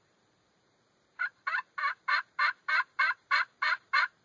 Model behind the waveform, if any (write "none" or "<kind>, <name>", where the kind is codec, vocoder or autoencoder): vocoder, BigVGAN v2